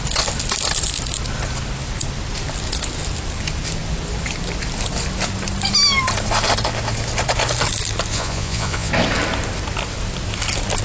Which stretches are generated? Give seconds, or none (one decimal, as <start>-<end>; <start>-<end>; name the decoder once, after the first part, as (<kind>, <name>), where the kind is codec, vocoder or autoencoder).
8.1-8.9 (vocoder, Vocos)